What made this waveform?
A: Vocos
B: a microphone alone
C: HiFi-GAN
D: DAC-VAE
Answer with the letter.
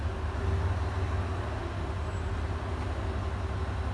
B